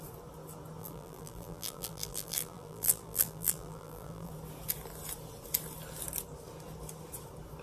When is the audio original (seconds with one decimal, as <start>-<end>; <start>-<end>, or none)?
0.0-0.8; 4.3-7.6

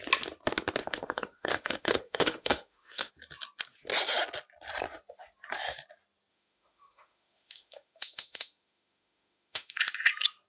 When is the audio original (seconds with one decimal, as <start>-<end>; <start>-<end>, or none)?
0.0-0.8; 3.1-6.3; 9.8-10.5